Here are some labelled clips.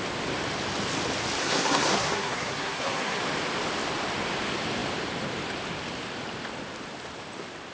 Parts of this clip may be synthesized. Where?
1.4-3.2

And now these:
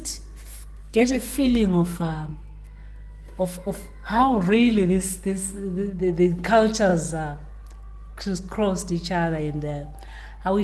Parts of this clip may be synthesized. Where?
0.8-6.0

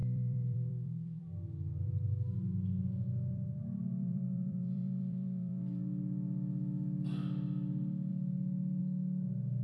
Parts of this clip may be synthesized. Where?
0.0-1.2; 3.3-5.8